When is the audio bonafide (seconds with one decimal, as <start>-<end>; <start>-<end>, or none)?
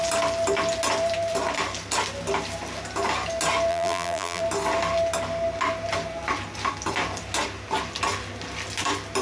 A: 0.0-3.7; 4.4-9.2